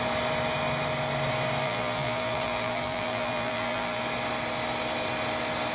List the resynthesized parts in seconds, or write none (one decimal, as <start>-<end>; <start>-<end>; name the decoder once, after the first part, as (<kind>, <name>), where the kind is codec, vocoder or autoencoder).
1.6-4.0 (vocoder, BigVGAN v2)